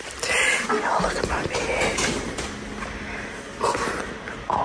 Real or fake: real